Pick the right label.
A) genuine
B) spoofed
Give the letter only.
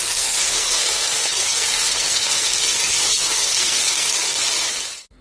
B